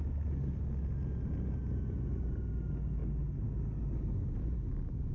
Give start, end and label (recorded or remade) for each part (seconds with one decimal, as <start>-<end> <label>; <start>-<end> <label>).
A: 0.0-5.1 recorded